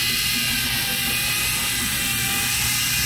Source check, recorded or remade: recorded